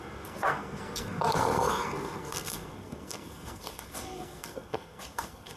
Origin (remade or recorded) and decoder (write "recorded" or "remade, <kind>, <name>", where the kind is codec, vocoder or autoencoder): remade, codec, SNAC